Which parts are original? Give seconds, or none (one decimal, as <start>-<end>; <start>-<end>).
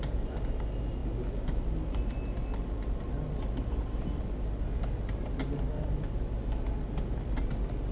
0.0-7.9